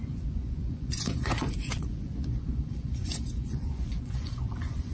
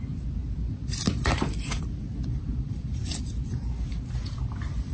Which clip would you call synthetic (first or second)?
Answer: first